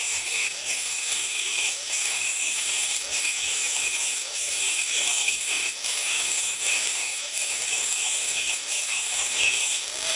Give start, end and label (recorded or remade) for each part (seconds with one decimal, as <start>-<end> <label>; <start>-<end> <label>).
0.0-10.2 remade

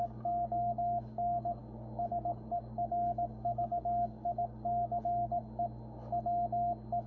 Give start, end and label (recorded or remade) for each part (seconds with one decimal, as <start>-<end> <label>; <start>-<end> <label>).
0.0-1.6 remade; 1.6-2.1 recorded; 2.1-5.4 remade; 5.4-7.1 recorded

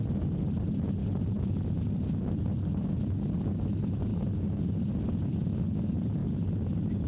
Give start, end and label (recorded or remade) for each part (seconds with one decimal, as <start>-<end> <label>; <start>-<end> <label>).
0.0-7.1 recorded